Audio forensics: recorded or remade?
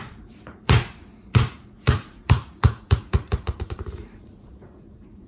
remade